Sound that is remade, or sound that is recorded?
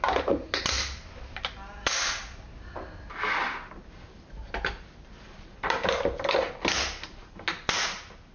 recorded